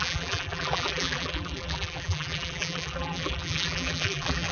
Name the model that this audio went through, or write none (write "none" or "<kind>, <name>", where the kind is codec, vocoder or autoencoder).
vocoder, BigVGAN v2